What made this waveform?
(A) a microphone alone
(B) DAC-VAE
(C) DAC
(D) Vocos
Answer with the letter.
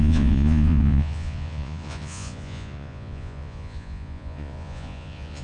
D